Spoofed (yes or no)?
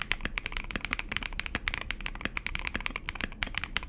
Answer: no